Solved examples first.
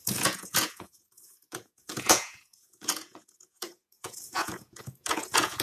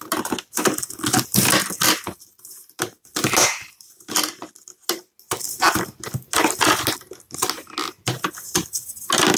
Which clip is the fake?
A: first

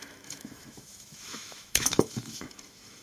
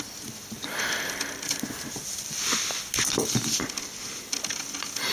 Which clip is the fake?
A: first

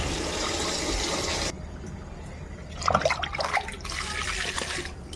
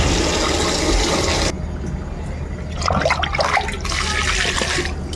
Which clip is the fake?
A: first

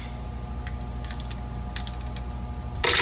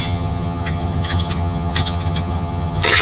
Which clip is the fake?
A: second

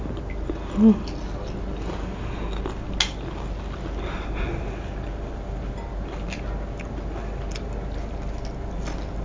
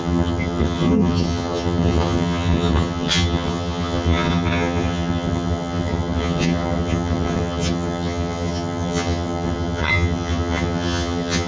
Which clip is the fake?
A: second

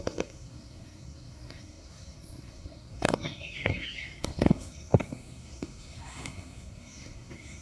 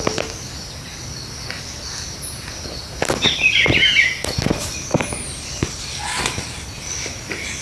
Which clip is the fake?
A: first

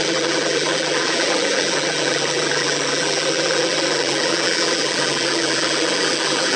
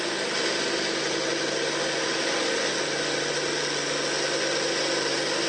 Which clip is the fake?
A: first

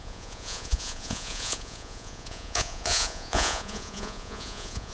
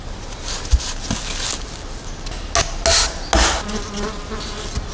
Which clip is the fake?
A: first